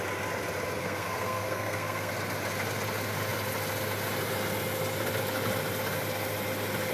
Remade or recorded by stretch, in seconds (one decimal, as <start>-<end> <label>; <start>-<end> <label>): 0.0-0.8 recorded; 0.8-2.1 remade; 2.1-6.9 recorded